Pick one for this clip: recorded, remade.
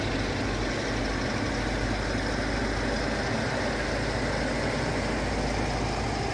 recorded